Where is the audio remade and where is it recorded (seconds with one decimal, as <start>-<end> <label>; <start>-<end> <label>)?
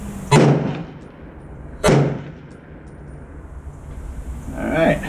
0.0-0.8 recorded; 0.8-1.9 remade; 1.9-5.1 recorded